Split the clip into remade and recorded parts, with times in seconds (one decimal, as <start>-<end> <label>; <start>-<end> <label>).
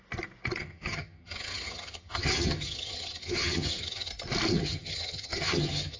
0.0-0.6 recorded; 0.6-4.1 remade; 4.1-4.5 recorded; 4.5-6.0 remade